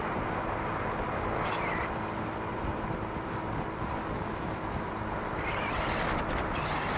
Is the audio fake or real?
real